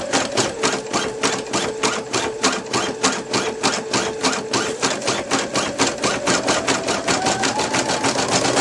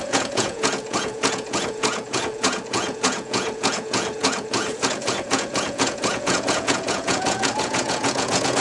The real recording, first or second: first